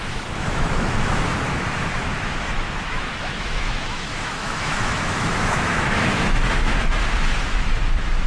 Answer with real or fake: fake